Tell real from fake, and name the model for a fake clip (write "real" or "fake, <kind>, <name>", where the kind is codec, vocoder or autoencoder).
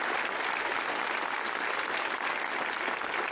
real